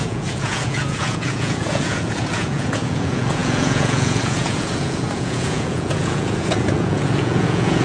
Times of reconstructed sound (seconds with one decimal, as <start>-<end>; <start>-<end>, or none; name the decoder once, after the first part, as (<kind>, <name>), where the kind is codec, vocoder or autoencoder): 0.0-7.8 (vocoder, Vocos)